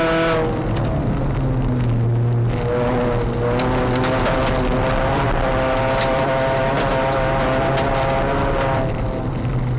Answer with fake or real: real